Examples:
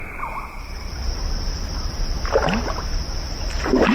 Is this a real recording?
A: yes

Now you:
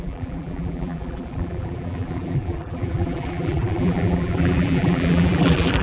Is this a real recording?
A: no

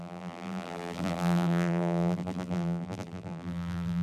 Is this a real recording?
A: no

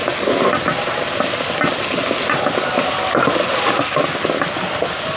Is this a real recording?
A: yes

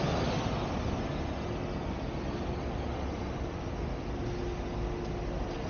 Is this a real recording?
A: yes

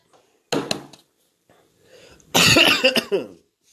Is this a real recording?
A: yes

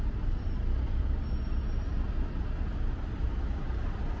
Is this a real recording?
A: yes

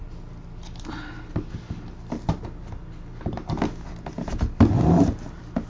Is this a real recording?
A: yes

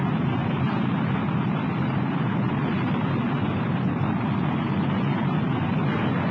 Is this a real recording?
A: no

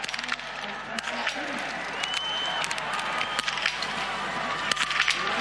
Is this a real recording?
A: yes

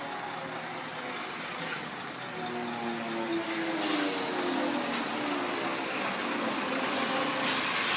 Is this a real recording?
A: yes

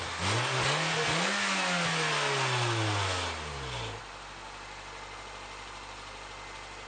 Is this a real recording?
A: yes